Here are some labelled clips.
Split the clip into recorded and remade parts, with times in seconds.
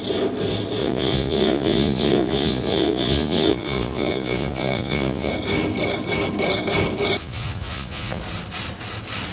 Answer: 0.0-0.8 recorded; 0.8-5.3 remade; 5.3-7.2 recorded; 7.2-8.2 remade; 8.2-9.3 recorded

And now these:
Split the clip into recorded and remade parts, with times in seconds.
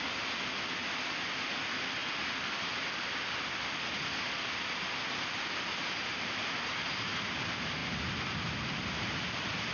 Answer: 0.0-9.7 recorded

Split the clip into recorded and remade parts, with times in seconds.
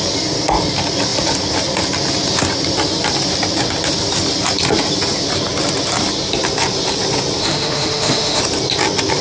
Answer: 0.0-7.4 recorded; 7.4-8.4 remade; 8.4-9.2 recorded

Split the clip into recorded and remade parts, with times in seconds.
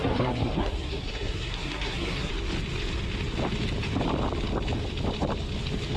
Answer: 0.0-2.3 remade; 2.3-6.0 recorded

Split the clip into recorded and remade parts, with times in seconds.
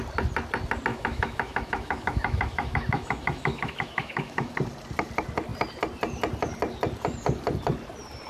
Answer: 0.0-0.9 recorded; 0.9-4.5 remade; 4.5-8.3 recorded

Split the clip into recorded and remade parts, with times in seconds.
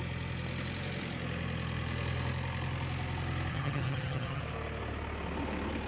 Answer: 0.0-3.5 recorded; 3.5-4.4 remade; 4.4-5.9 recorded